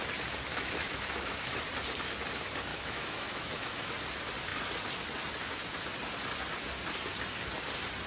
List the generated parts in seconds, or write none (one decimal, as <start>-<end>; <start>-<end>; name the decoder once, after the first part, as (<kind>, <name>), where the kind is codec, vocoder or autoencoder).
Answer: 0.5-1.6 (autoencoder, DAC-VAE); 2.7-3.9